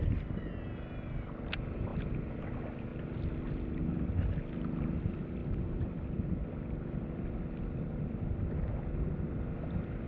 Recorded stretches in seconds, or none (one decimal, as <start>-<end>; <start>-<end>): 0.0-10.1